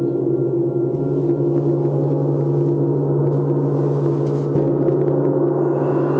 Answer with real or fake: real